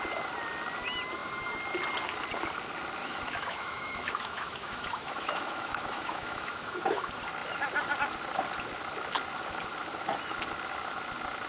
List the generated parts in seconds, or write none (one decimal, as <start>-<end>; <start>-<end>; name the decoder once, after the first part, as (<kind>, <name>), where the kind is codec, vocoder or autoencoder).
3.0-6.9 (autoencoder, DAC-VAE)